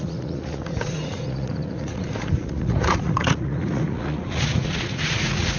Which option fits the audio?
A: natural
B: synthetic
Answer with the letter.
B